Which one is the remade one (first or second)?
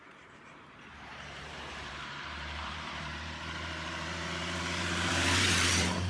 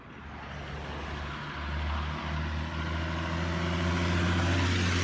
first